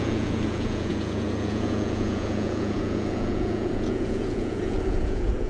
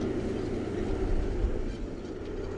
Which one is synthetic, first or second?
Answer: first